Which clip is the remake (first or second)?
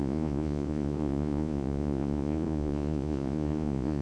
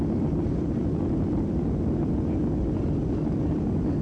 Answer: first